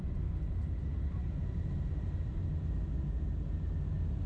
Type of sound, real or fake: real